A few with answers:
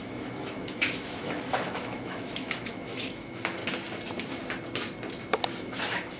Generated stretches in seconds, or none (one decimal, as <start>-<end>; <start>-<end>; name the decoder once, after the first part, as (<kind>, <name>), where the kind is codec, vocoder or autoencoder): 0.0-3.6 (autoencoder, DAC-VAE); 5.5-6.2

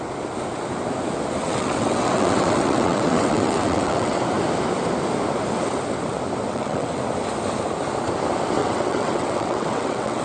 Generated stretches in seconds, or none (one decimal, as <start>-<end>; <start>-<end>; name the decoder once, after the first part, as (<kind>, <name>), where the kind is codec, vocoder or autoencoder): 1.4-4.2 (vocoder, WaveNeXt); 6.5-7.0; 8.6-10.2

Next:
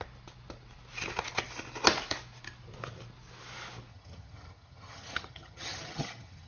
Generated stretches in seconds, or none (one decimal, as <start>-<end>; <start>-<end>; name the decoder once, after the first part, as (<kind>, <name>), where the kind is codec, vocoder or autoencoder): 3.9-6.5 (vocoder, HiFi-GAN)